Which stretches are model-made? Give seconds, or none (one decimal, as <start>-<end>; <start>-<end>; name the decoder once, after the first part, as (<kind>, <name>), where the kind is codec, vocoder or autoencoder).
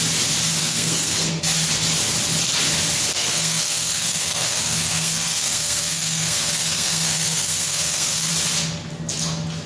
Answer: 0.6-1.4 (codec, SNAC); 3.1-8.3